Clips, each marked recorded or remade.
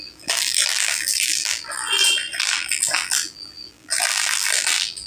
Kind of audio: remade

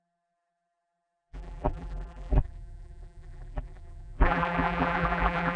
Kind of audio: remade